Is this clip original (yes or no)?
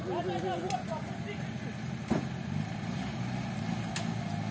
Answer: yes